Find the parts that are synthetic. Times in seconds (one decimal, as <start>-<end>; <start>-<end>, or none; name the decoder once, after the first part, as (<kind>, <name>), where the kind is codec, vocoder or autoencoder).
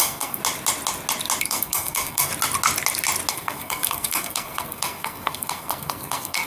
0.0-0.4 (codec, SNAC); 1.4-2.3; 3.3-6.5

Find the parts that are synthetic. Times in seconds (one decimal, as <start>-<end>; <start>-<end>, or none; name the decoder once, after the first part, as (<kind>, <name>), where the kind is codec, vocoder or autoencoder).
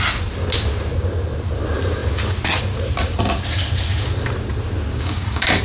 4.9-5.6 (codec, DAC)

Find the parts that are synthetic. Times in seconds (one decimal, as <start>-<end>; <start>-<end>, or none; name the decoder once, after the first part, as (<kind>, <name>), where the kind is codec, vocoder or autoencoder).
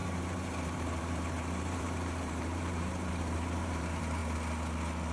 0.0-4.2 (vocoder, BigVGAN v2)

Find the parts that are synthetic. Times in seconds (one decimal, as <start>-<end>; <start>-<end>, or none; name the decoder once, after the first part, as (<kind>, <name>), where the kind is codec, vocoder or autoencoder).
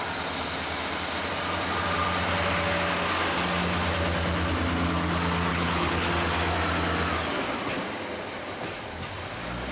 5.5-6.1 (codec, HILCodec)